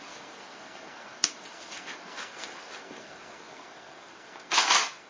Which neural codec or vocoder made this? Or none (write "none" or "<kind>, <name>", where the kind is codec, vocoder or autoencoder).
codec, SNAC